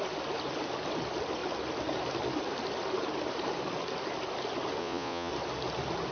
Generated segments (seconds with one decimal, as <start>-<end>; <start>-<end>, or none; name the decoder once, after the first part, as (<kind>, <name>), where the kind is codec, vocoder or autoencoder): 4.8-5.3 (vocoder, Vocos)